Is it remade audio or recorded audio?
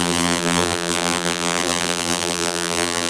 remade